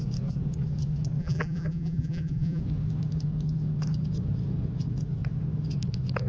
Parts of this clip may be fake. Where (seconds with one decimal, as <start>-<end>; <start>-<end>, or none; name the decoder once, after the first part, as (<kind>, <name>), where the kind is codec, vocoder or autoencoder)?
1.2-2.6 (vocoder, BigVGAN v2)